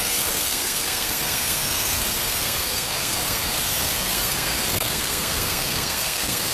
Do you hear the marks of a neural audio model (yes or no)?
yes